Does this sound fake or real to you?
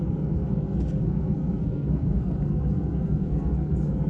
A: fake